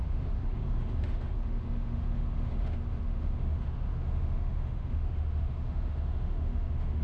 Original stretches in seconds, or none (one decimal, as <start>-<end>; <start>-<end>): none